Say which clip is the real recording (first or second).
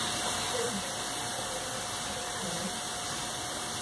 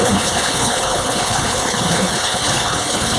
first